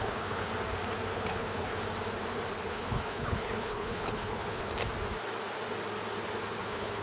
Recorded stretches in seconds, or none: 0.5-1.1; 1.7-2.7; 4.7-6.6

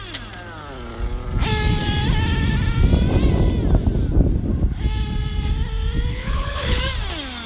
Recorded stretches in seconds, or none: 0.0-6.1; 6.8-7.5

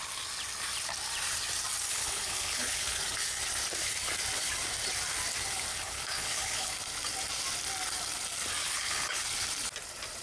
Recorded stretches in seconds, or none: 0.0-1.9; 3.0-5.7; 6.7-8.6; 9.2-10.2

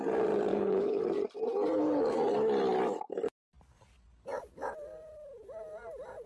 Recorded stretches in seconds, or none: 0.0-0.5; 1.0-6.3